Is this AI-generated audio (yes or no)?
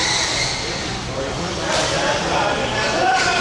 yes